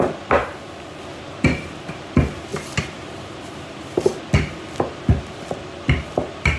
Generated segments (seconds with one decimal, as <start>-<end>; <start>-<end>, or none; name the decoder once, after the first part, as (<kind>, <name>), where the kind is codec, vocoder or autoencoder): 0.4-1.0 (vocoder, BigVGAN v2)